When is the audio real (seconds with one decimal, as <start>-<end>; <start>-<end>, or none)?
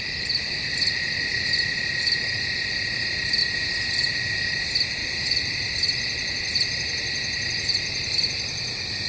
0.0-3.4; 4.6-5.0; 5.7-9.1